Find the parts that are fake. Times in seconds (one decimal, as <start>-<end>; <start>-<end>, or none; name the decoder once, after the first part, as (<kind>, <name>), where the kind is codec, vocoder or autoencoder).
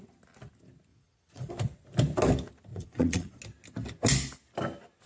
0.9-1.5 (vocoder, Vocos); 2.7-3.4